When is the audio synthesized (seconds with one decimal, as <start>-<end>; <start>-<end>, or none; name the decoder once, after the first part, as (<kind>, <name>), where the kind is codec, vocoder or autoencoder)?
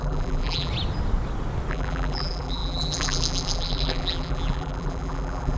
0.0-0.7 (vocoder, BigVGAN v2); 1.7-5.6